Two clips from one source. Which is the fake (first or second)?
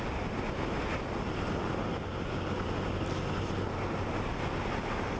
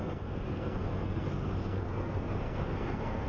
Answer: second